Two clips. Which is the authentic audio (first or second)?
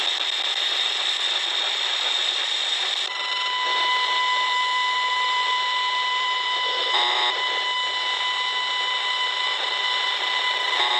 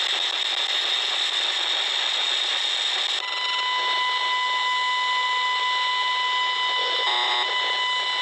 second